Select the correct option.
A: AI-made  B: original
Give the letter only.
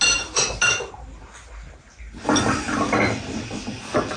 B